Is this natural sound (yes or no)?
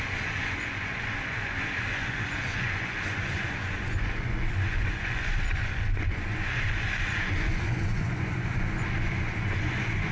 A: no